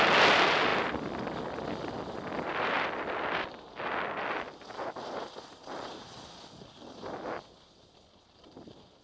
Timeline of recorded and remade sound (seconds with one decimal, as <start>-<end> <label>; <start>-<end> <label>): 0.0-9.0 recorded